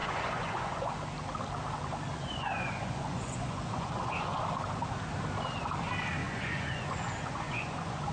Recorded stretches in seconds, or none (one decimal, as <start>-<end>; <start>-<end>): 0.9-2.1; 4.4-6.2